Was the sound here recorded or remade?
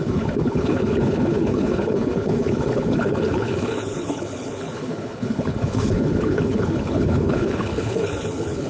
remade